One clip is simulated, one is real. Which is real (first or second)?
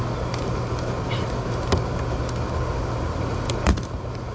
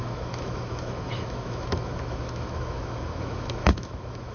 first